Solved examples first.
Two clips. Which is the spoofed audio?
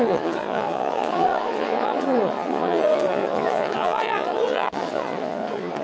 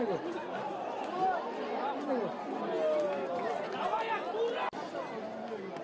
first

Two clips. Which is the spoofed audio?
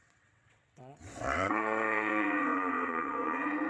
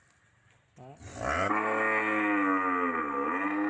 first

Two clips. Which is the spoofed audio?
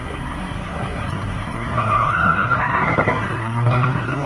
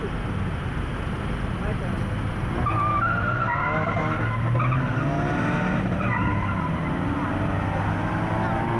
first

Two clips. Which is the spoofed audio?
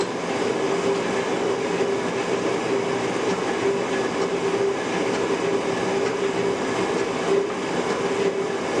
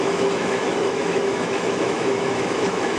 second